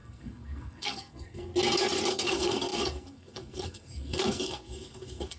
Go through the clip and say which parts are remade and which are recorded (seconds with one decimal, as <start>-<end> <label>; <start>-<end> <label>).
0.0-1.5 remade; 1.5-2.1 recorded; 2.1-5.4 remade